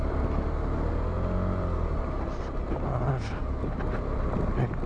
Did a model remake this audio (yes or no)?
no